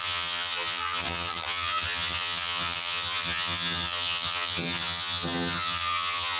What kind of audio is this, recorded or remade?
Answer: remade